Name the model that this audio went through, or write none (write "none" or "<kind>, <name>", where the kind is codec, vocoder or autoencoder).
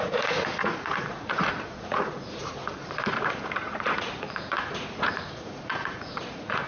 vocoder, Vocos